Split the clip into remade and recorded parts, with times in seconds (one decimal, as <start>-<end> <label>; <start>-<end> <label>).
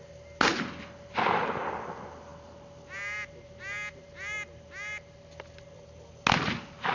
0.0-6.9 recorded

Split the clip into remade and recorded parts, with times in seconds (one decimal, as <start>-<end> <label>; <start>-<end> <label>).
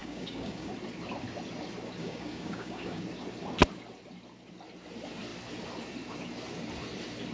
0.0-0.7 remade; 0.7-2.0 recorded; 2.0-3.0 remade; 3.0-7.3 recorded